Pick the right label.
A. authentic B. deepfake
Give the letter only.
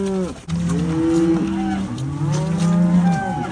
A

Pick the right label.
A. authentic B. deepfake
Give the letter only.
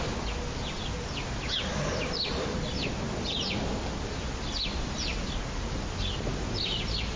A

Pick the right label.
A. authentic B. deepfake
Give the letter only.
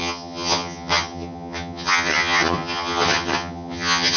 B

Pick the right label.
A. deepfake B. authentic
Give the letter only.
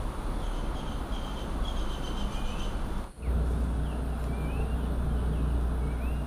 B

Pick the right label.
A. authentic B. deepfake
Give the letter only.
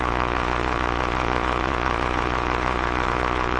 B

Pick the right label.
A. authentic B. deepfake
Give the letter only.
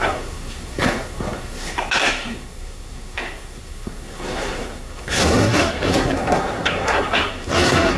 B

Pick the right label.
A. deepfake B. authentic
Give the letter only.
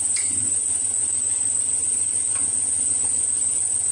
B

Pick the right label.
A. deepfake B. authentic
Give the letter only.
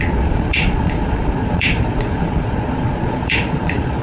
A